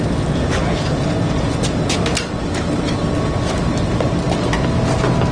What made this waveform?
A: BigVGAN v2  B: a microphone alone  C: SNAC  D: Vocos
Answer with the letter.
B